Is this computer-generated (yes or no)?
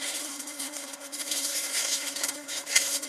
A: yes